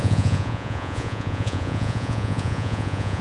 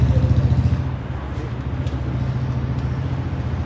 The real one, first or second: second